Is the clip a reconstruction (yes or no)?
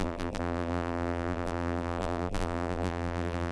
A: yes